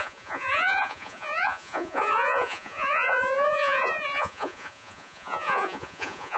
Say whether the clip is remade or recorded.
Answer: remade